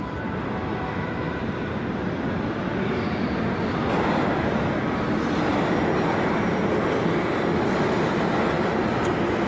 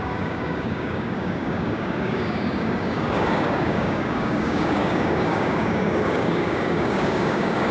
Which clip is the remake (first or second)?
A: second